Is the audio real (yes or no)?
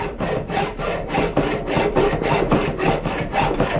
yes